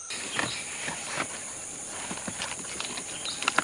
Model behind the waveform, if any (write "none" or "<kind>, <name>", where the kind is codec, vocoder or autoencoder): none